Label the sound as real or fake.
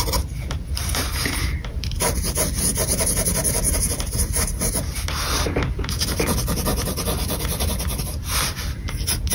fake